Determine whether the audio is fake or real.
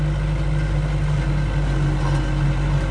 real